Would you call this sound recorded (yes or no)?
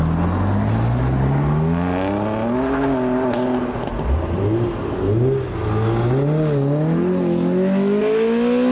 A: yes